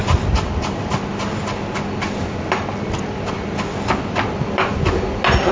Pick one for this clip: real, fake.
real